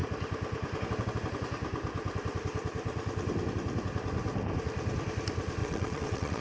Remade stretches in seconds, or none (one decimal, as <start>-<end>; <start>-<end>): 5.6-6.4